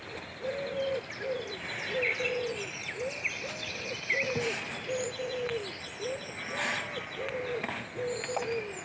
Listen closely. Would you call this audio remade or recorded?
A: recorded